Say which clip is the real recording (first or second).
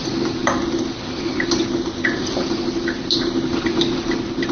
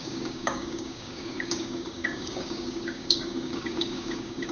first